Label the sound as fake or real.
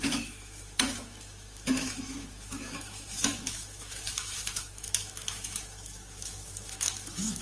fake